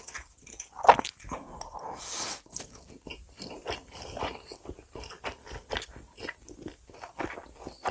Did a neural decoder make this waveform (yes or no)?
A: no